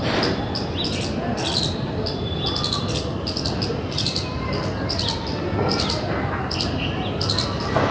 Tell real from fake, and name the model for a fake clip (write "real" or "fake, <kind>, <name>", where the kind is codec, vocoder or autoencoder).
real